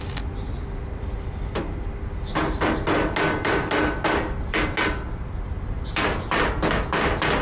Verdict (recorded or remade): recorded